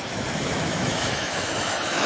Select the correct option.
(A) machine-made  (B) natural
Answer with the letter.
A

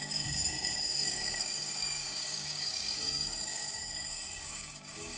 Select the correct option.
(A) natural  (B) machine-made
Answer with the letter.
B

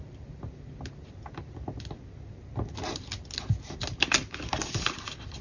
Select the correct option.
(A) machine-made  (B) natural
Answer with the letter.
B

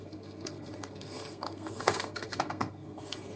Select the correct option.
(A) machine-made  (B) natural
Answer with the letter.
A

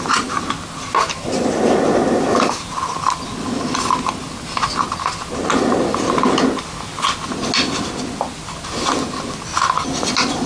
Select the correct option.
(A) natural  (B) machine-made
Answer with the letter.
A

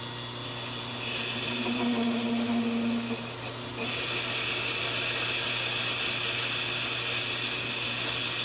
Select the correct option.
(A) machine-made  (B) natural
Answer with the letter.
B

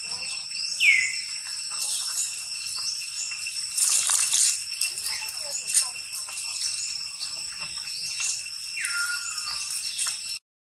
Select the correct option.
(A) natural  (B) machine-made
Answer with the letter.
A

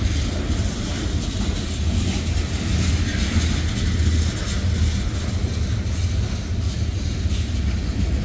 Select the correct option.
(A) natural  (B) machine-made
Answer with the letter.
A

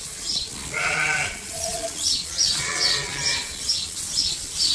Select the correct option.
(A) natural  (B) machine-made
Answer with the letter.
B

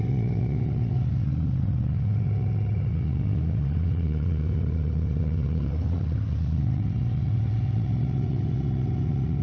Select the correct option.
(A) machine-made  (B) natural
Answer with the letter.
A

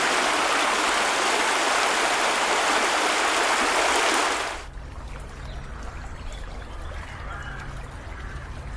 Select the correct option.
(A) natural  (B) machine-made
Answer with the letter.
A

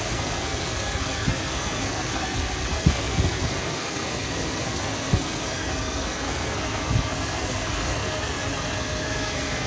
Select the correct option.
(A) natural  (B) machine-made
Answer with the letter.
B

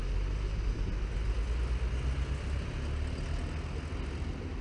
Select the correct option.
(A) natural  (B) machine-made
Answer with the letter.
A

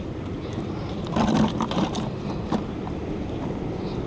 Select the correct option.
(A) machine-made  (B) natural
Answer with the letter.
B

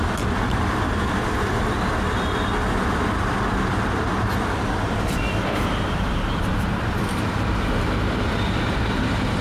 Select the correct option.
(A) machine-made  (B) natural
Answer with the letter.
A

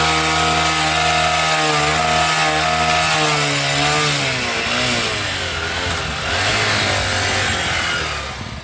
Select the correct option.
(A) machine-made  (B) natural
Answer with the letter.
B